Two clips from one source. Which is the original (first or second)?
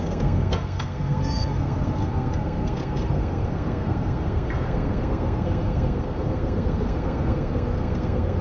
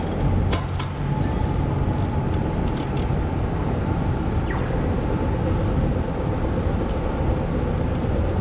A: second